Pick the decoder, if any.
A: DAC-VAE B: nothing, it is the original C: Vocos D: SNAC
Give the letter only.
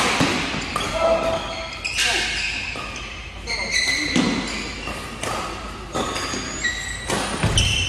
B